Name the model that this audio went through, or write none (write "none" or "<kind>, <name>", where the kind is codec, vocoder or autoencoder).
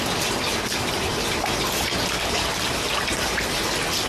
none